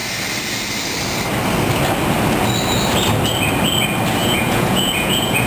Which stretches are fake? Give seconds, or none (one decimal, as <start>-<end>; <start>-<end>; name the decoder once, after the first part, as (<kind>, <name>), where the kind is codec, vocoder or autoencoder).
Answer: 4.2-5.5 (vocoder, Vocos)